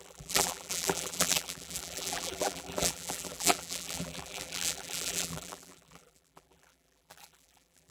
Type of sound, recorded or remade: remade